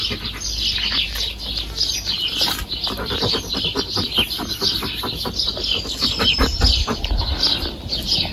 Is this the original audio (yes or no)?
yes